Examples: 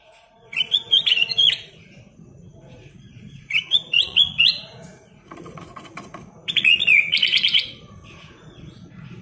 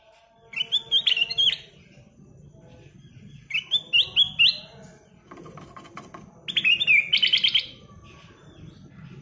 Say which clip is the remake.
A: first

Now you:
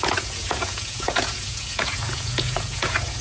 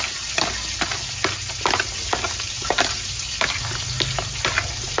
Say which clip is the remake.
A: first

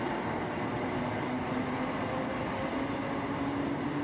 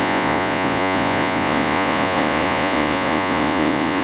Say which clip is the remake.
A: second